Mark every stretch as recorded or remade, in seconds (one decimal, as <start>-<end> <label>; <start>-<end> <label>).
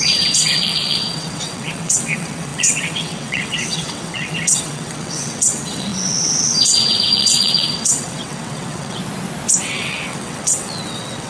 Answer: 0.0-9.0 remade; 9.0-9.6 recorded; 9.6-11.3 remade